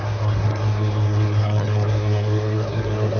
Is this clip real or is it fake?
fake